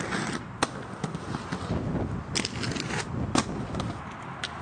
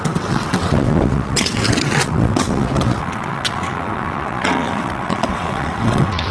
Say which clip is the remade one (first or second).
second